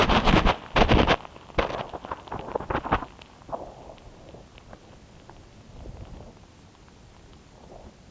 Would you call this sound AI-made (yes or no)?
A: no